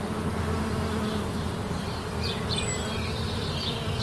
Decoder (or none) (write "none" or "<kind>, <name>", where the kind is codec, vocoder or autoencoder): none